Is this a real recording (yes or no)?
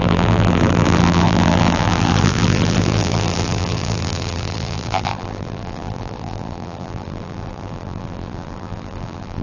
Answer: no